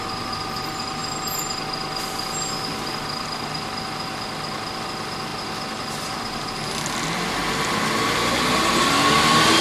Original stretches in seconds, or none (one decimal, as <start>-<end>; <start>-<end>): 0.0-9.6